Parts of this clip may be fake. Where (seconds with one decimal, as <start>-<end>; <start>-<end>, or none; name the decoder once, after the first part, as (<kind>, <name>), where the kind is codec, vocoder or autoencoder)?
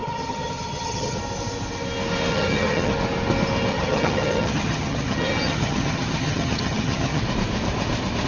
0.0-1.2 (vocoder, HiFi-GAN); 2.3-2.9; 3.7-7.2